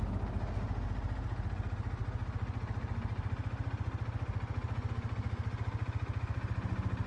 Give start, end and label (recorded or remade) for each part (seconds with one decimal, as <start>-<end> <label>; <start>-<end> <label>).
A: 0.0-7.1 recorded